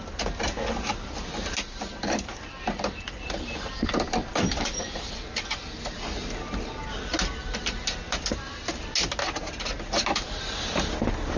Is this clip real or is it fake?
real